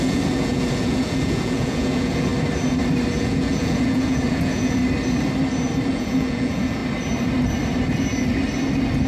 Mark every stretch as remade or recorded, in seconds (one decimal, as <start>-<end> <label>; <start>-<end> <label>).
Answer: 0.0-2.3 remade; 2.3-3.2 recorded; 3.2-4.8 remade; 4.8-5.9 recorded; 5.9-6.8 remade; 6.8-9.1 recorded